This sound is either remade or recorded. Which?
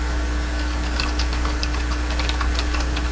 remade